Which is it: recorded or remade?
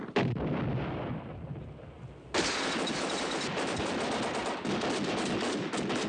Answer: recorded